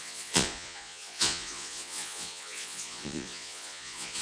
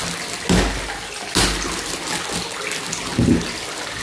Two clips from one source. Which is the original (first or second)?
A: second